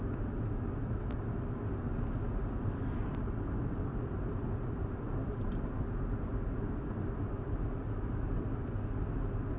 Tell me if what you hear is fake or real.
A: real